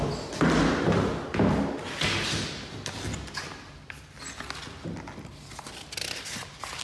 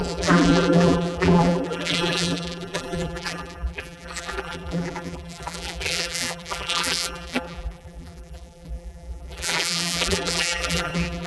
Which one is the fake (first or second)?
second